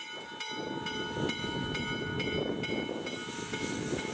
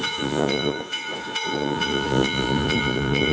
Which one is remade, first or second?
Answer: second